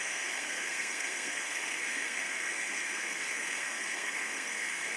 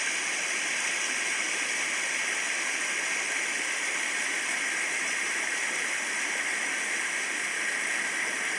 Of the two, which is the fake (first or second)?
first